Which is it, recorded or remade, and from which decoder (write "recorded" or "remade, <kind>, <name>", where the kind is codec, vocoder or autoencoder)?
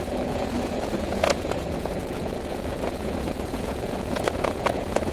remade, vocoder, Vocos